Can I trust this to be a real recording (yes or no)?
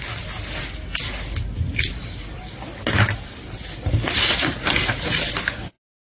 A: yes